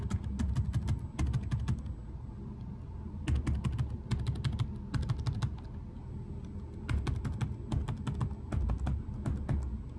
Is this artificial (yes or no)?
no